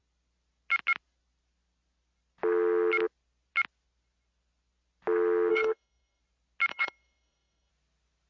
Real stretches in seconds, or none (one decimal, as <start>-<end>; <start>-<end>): 0.0-5.5; 6.2-6.7; 7.7-8.3

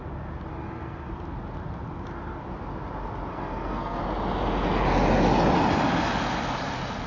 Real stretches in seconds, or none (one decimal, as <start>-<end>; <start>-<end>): 0.0-0.5; 1.1-3.3; 4.0-7.1